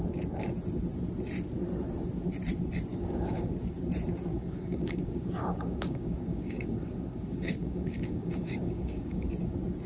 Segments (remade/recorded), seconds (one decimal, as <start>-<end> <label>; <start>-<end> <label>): 0.0-2.9 recorded; 2.9-3.5 remade; 3.5-4.3 recorded; 4.3-9.3 remade; 9.3-9.9 recorded